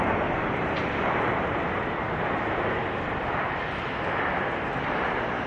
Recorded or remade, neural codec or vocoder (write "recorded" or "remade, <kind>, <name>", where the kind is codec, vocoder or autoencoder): recorded